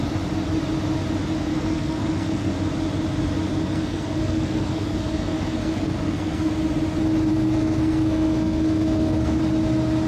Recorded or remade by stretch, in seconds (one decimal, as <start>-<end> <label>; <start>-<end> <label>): 0.0-1.5 recorded; 1.5-2.5 remade; 2.5-3.5 recorded; 3.5-6.5 remade; 6.5-7.3 recorded; 7.3-9.4 remade; 9.4-10.1 recorded